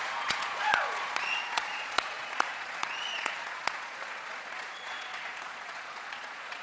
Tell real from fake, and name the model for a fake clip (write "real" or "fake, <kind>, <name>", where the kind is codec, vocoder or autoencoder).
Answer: fake, vocoder, Vocos